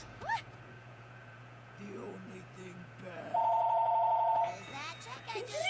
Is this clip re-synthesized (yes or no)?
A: yes